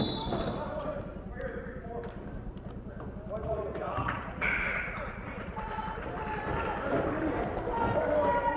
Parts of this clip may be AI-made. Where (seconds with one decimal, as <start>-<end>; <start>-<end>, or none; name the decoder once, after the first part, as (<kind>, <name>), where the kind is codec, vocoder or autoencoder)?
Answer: 3.4-6.1 (vocoder, Vocos)